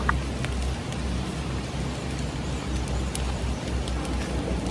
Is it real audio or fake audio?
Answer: real